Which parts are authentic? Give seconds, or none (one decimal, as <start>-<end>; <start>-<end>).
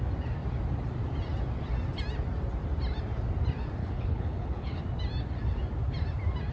0.0-3.8; 4.8-6.5